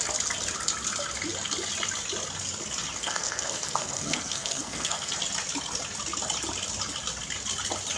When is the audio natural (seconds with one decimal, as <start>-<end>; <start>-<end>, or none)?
0.0-3.0; 5.1-8.0

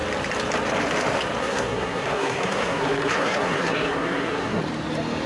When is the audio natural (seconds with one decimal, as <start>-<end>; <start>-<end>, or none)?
0.0-1.4; 4.6-5.3

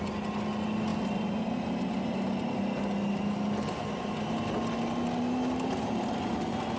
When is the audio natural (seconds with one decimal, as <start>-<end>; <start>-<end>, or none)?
0.0-6.8

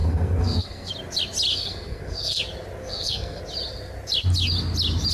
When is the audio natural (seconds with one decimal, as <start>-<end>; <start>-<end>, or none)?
0.9-1.5; 2.4-2.8; 3.4-5.1